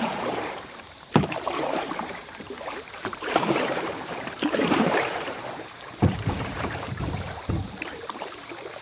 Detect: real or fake fake